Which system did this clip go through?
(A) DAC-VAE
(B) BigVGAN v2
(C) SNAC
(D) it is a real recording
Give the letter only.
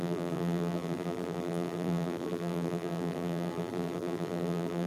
B